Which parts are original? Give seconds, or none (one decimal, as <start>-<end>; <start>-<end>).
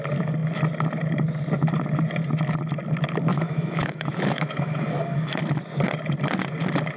0.0-3.3; 5.4-7.0